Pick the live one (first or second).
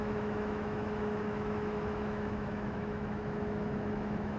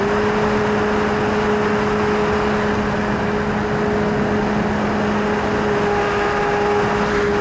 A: second